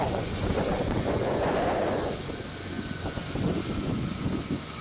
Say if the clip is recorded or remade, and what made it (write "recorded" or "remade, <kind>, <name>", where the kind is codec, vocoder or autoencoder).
remade, vocoder, Vocos